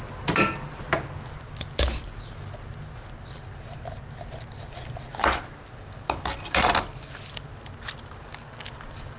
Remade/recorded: recorded